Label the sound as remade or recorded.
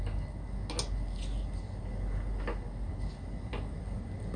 recorded